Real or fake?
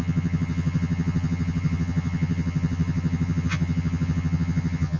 fake